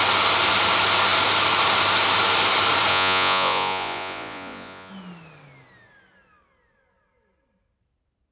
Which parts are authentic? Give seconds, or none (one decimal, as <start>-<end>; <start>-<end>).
0.0-2.9; 4.9-8.3